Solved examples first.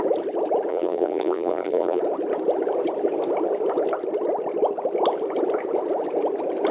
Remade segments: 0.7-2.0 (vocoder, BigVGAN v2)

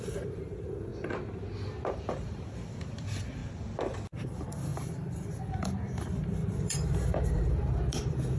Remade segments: 0.0-0.9 (vocoder, BigVGAN v2); 2.1-3.4; 4.2-8.4

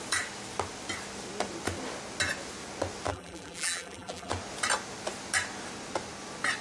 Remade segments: 3.1-4.3 (vocoder, BigVGAN v2)

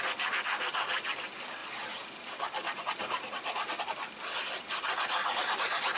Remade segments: 1.6-3.8 (vocoder, BigVGAN v2); 5.2-6.0

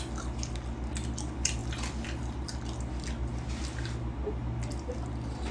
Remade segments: none